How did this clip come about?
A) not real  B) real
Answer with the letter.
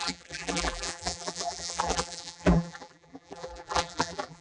A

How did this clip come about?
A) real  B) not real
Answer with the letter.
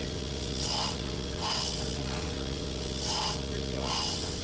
B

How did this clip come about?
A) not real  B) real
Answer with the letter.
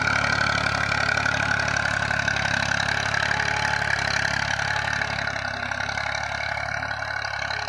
B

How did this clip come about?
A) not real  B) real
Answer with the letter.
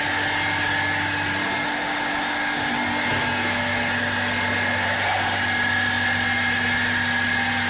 B